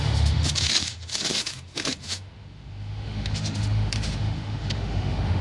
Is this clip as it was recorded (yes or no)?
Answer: no